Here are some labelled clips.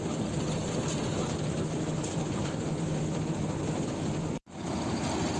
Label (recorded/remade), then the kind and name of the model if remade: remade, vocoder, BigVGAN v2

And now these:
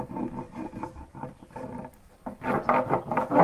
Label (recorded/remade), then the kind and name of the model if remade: recorded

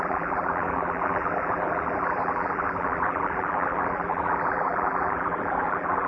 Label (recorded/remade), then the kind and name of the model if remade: remade, vocoder, BigVGAN v2